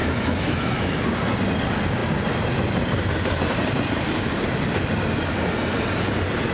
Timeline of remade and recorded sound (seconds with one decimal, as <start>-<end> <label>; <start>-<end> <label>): 0.0-1.0 remade; 1.0-6.5 recorded